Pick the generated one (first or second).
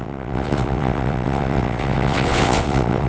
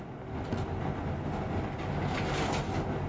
first